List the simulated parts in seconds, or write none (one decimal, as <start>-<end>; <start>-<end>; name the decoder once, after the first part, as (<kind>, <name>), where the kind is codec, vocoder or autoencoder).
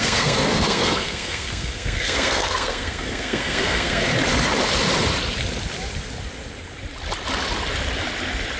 0.0-4.1 (codec, SNAC)